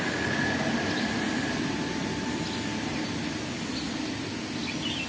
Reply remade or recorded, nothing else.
recorded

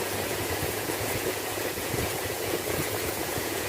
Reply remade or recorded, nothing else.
remade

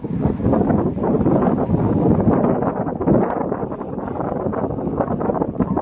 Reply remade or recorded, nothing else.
recorded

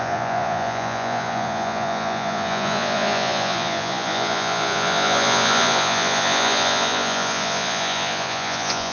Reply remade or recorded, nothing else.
remade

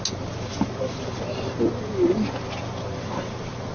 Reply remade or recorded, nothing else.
recorded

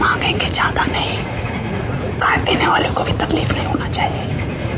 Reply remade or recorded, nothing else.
remade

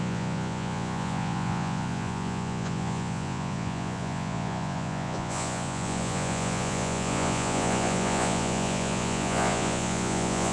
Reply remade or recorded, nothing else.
remade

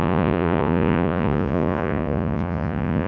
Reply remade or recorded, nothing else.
remade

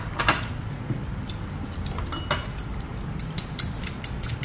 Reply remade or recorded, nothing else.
recorded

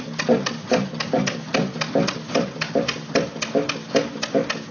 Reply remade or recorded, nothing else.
recorded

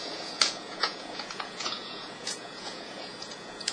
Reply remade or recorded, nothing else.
remade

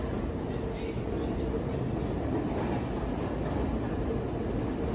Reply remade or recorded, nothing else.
recorded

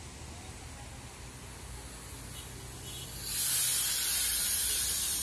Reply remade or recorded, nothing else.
recorded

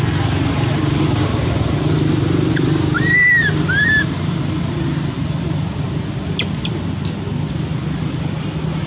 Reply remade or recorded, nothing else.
recorded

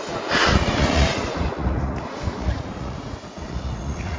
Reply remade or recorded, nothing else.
remade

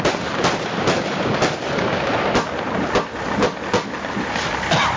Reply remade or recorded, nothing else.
recorded